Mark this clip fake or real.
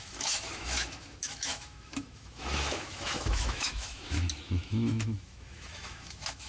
fake